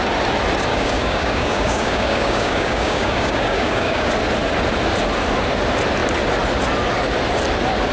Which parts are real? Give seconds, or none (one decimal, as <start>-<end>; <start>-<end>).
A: 0.0-0.7; 4.1-7.9